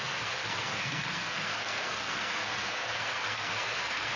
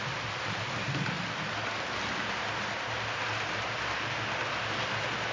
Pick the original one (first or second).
second